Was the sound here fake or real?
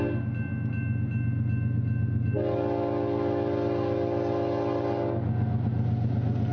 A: real